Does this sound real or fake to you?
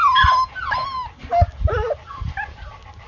real